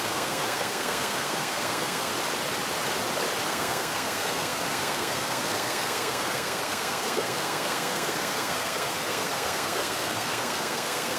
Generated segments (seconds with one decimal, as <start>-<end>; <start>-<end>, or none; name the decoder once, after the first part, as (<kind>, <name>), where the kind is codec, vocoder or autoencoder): 0.0-2.1 (codec, SNAC); 3.5-11.2